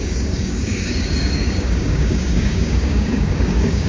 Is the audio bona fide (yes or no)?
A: no